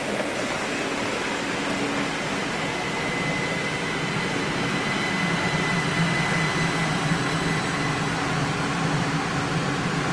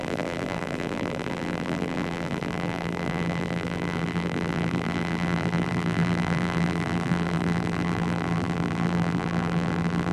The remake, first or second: second